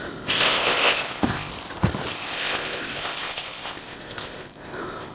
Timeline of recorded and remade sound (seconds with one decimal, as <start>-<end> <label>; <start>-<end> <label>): 0.0-1.5 remade; 1.5-2.1 recorded; 2.1-5.1 remade

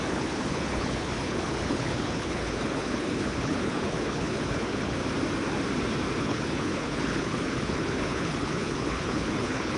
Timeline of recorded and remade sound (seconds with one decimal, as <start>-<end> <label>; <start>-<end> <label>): 0.0-5.0 remade; 5.0-6.2 recorded; 6.2-9.8 remade

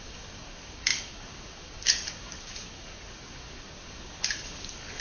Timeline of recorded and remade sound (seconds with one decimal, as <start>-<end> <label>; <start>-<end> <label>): 0.0-5.0 remade

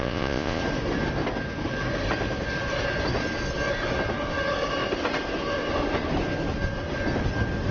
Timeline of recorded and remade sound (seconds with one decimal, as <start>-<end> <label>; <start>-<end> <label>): 0.0-0.6 remade; 0.6-7.7 recorded

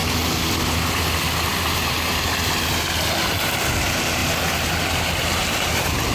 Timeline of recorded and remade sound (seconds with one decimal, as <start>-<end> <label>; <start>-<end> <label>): 0.0-1.5 recorded; 1.5-3.3 remade; 3.3-4.2 recorded; 4.2-6.1 remade

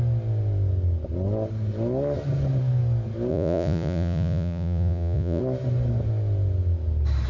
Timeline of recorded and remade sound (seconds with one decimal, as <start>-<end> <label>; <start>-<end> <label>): 0.0-3.3 recorded; 3.3-5.4 remade; 5.4-7.3 recorded

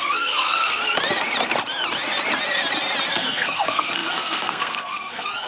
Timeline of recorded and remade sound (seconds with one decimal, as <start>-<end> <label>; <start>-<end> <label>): 0.0-0.8 remade; 0.8-3.1 recorded; 3.1-5.5 remade

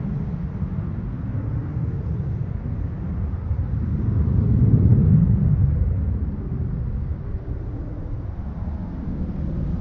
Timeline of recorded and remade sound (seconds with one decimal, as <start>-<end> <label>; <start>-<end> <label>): 0.0-4.9 recorded; 4.9-5.7 remade; 5.7-9.8 recorded